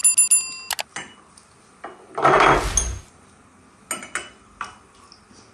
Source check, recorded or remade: recorded